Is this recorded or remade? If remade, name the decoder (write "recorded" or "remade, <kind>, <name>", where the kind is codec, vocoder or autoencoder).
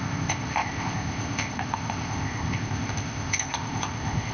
remade, codec, ZipCodec